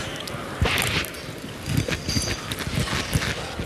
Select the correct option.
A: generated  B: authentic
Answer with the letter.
B